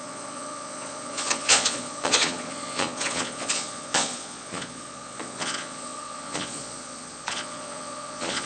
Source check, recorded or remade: remade